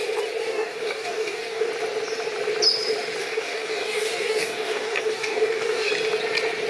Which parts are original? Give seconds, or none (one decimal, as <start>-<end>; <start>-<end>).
0.0-0.4; 1.7-3.2; 5.9-6.7